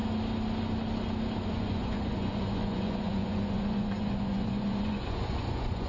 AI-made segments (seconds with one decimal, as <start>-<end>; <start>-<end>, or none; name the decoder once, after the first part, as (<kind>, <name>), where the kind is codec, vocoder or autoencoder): 1.5-5.9 (vocoder, Vocos)